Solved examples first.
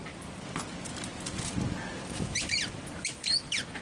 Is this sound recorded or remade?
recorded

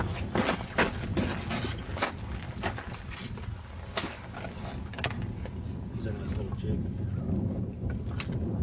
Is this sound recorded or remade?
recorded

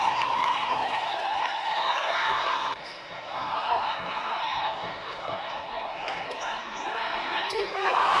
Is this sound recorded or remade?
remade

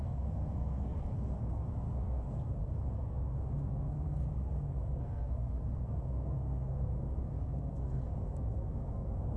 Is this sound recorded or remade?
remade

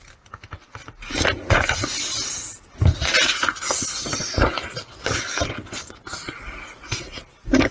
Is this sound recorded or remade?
recorded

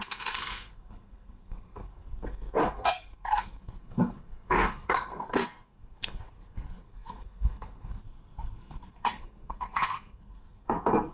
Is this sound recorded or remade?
remade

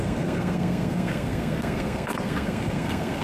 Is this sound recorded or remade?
remade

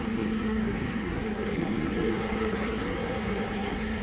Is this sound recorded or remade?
remade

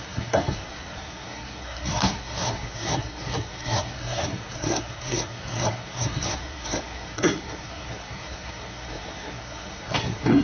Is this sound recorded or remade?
remade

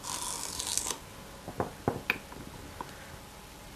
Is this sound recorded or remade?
recorded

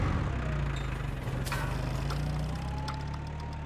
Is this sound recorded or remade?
recorded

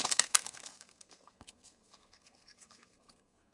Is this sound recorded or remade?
remade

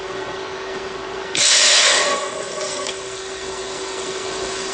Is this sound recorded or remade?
remade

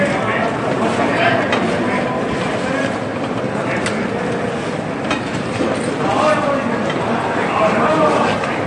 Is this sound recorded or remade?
recorded